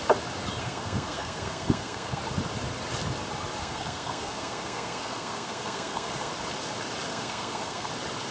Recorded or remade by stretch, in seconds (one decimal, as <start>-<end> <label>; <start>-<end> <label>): 0.0-0.6 recorded; 0.6-2.2 remade; 2.2-3.6 recorded; 3.6-6.3 remade; 6.3-7.1 recorded; 7.1-7.9 remade; 7.9-8.3 recorded